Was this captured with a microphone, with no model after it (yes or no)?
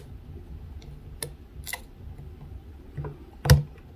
yes